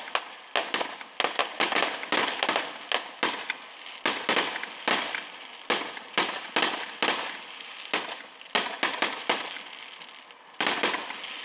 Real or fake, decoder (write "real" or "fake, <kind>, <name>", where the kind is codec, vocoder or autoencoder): real